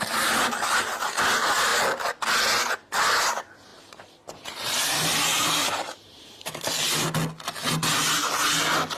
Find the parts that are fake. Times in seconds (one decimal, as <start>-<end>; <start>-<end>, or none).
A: 3.7-6.6